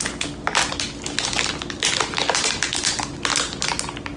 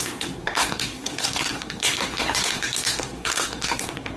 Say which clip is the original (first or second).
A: first